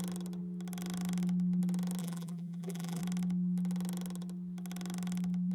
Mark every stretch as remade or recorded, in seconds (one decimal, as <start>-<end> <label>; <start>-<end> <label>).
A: 0.0-2.0 recorded; 2.0-3.0 remade; 3.0-5.5 recorded